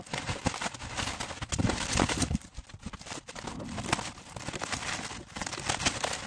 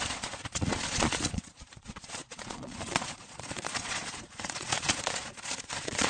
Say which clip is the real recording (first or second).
first